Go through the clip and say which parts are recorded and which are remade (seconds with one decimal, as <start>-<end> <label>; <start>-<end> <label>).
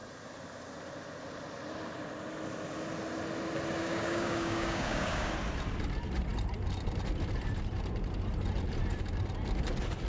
0.0-3.8 recorded; 3.8-5.3 remade; 5.3-10.1 recorded